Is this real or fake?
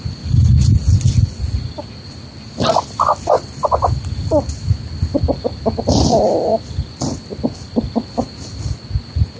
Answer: real